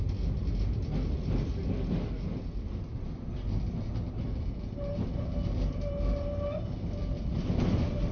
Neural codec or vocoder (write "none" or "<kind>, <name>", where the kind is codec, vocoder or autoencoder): none